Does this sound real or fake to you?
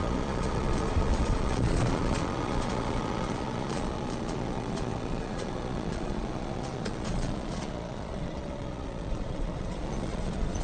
fake